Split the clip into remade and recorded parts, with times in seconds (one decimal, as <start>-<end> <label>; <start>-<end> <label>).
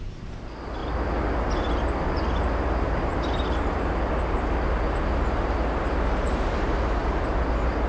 0.0-7.9 recorded